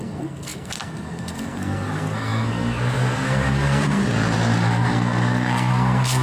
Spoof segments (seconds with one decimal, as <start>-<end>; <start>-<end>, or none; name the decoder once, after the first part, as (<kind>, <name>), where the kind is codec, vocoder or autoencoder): 0.0-4.0 (codec, SNAC); 4.7-6.2